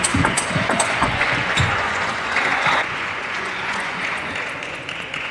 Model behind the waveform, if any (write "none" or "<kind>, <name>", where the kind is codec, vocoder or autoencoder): vocoder, Vocos